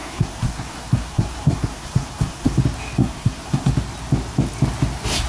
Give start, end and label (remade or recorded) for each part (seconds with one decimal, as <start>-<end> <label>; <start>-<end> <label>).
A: 0.0-2.6 remade; 2.6-3.0 recorded; 3.0-3.7 remade; 3.7-5.3 recorded